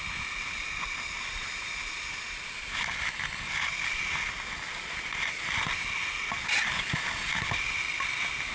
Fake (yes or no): no